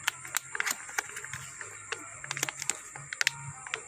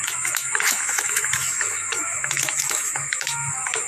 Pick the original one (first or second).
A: first